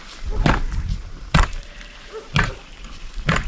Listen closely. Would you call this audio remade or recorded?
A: recorded